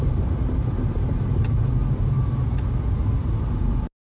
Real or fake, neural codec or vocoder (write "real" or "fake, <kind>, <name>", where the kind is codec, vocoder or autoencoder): real